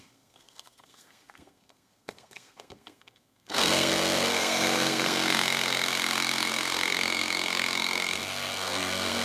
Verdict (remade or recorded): remade